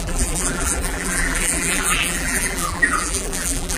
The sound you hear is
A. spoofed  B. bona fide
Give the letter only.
A